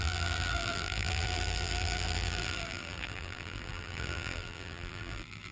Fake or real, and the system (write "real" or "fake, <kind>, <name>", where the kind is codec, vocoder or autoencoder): fake, vocoder, BigVGAN v2